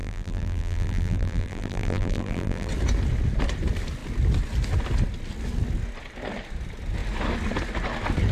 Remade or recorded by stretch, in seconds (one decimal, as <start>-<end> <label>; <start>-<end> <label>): 0.0-2.7 remade; 2.7-8.3 recorded